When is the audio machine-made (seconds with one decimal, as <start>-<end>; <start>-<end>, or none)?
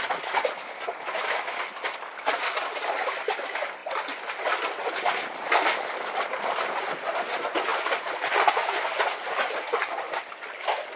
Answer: none